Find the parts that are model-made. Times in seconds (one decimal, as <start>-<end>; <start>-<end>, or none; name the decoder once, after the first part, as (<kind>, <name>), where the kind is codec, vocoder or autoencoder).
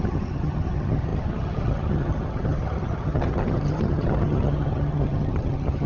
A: 0.0-5.9 (vocoder, HiFi-GAN)